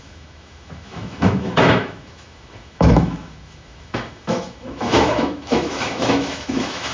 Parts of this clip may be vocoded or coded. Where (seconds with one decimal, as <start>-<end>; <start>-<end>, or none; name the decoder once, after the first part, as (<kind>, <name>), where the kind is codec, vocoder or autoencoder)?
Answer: 0.0-6.9 (autoencoder, DAC-VAE)